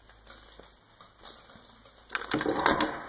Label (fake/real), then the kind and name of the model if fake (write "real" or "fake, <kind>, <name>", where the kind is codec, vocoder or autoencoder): real